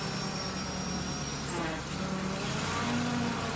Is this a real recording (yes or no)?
yes